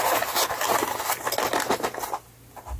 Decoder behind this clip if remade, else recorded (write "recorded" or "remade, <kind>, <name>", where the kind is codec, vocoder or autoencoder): recorded